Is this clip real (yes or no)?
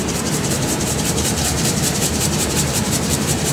no